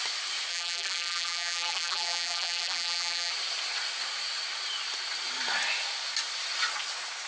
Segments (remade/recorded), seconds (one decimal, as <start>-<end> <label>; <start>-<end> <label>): 0.0-0.5 recorded; 0.5-3.3 remade; 3.3-7.3 recorded